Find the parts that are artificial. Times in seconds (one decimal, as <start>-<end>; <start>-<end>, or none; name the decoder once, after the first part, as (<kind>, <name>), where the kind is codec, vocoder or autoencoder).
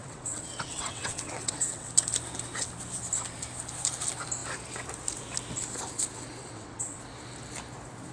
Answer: 0.0-1.9 (vocoder, WaveNeXt); 6.4-7.0